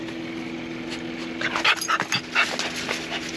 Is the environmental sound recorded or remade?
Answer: recorded